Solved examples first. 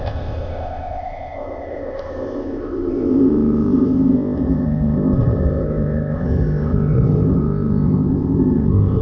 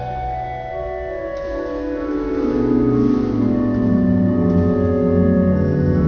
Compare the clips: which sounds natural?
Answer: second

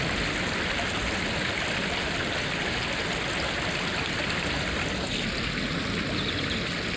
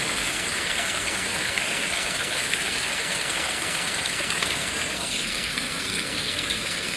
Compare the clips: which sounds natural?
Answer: first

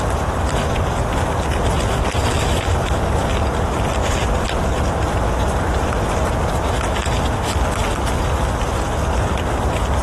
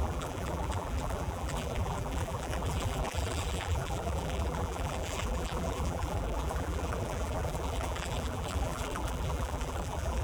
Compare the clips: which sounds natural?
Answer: first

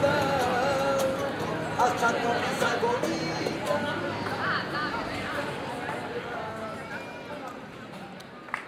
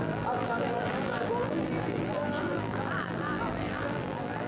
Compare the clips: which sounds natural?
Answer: first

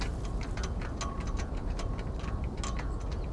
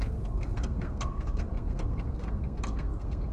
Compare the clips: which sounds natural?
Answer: first